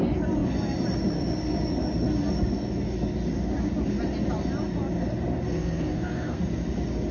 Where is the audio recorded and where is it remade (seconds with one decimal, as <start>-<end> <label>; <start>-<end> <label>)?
0.0-5.5 recorded; 5.5-6.4 remade; 6.4-7.1 recorded